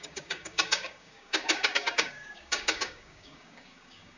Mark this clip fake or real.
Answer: fake